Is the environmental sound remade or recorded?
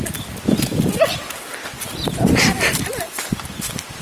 recorded